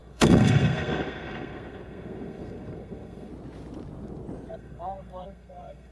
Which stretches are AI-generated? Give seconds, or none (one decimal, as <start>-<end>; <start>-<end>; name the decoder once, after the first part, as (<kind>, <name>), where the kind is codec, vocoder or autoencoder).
0.0-3.3 (codec, SNAC); 4.5-5.9